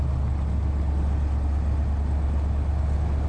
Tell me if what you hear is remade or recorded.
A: recorded